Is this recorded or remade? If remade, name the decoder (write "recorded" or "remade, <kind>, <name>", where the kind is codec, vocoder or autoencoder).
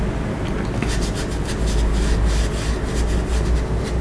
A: recorded